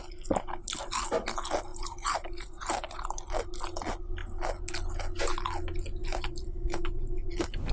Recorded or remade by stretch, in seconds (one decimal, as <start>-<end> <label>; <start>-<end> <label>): 0.0-1.7 recorded; 1.7-3.3 remade; 3.3-6.0 recorded; 6.0-7.7 remade